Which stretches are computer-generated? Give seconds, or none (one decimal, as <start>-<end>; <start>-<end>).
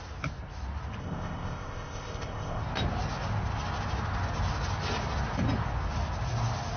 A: 1.0-2.6